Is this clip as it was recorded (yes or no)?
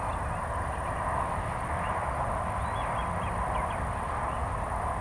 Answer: yes